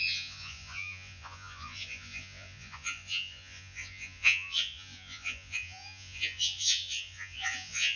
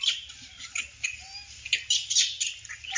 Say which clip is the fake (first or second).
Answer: first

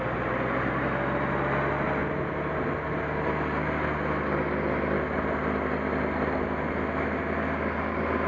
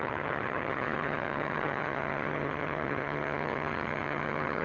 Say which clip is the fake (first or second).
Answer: second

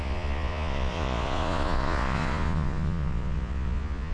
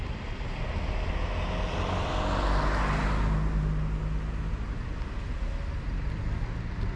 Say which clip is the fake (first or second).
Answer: first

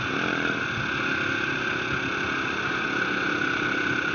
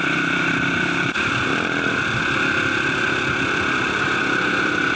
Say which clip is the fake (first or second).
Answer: second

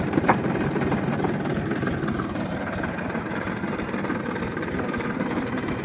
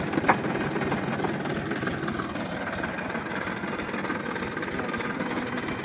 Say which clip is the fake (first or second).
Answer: first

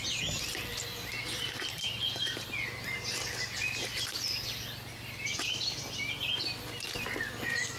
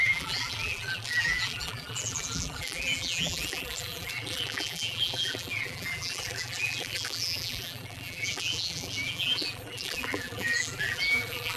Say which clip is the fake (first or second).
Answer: second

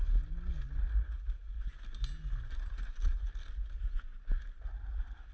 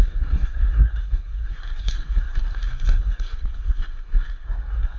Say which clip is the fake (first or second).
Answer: second